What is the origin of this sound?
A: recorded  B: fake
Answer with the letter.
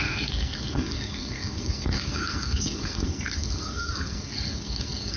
B